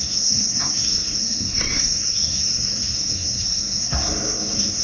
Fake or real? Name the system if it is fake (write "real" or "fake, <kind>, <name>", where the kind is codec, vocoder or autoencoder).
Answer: fake, codec, SNAC